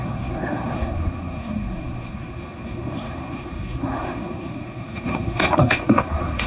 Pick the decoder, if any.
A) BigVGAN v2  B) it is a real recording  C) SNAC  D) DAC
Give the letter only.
C